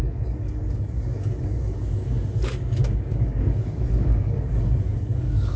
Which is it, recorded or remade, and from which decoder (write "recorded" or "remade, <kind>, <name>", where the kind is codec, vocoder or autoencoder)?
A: remade, codec, DAC